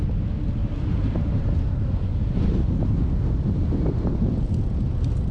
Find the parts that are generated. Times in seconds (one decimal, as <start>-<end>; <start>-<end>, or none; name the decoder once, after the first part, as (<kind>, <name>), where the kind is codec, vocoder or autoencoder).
0.6-3.1 (vocoder, BigVGAN v2)